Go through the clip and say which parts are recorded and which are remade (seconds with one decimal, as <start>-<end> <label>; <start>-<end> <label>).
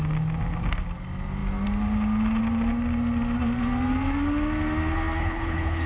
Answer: 0.0-5.2 recorded; 5.2-5.9 remade